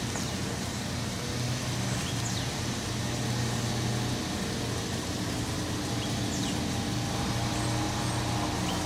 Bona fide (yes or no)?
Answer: yes